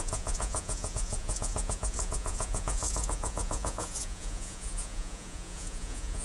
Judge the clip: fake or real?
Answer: fake